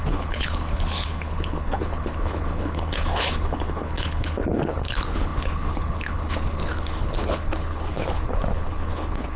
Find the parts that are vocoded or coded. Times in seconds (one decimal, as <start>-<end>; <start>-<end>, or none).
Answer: 0.0-9.4